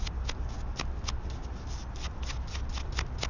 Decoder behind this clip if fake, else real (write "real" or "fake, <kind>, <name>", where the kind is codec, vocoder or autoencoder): real